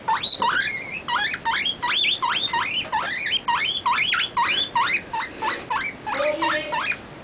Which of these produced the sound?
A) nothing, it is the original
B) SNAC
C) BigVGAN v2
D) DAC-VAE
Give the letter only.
A